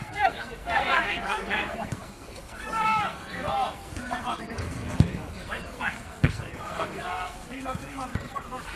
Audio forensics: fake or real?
fake